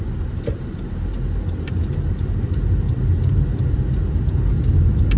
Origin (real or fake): real